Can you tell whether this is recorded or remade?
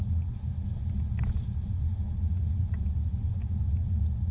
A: recorded